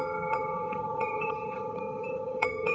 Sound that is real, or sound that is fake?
fake